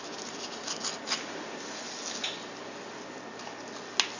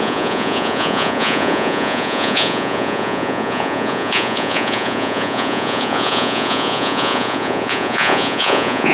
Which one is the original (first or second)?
first